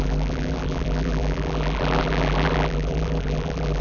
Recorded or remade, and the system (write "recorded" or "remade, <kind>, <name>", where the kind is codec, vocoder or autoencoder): remade, vocoder, BigVGAN v2